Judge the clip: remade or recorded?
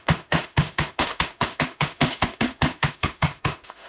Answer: remade